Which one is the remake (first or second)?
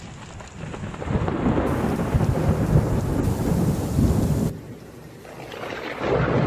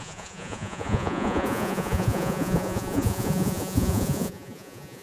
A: second